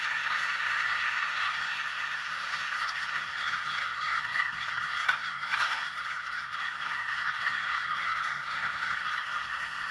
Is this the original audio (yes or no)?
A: no